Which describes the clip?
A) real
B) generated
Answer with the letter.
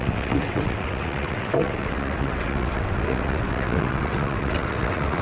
B